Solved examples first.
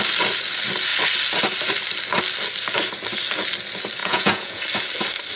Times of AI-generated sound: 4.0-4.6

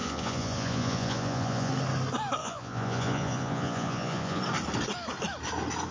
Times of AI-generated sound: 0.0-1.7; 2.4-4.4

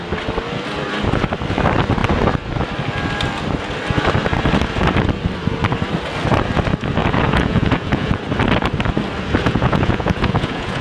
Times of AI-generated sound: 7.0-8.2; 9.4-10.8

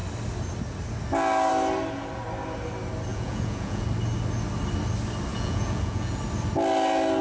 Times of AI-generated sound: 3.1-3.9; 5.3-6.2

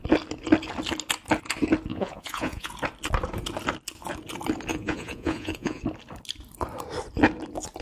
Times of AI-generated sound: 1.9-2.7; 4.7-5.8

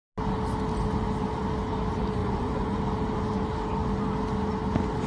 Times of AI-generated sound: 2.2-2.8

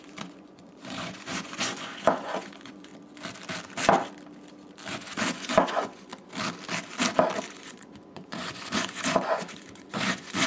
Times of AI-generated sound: 0.0-2.9; 4.9-6.1; 7.5-10.5